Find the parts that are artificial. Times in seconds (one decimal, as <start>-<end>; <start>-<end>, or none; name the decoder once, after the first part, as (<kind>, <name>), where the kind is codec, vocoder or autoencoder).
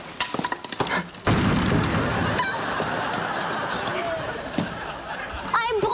none